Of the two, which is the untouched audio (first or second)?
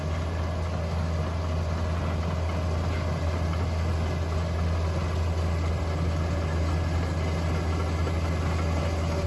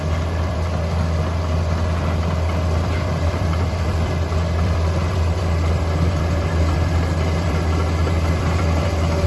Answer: first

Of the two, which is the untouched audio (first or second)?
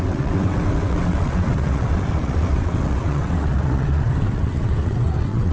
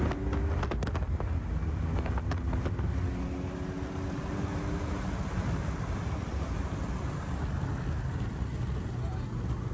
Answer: second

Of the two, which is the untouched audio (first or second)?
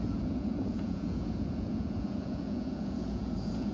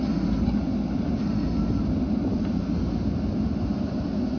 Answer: second